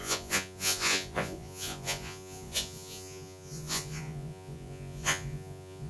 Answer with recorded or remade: remade